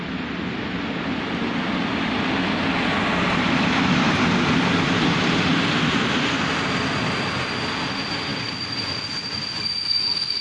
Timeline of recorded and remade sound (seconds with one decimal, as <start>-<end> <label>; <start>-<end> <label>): 0.0-10.4 recorded